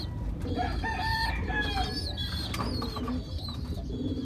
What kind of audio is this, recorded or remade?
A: remade